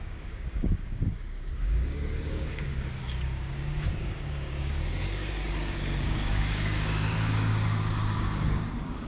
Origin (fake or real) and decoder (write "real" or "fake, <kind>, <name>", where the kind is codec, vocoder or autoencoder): fake, codec, DAC